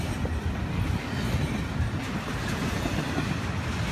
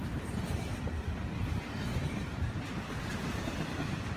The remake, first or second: second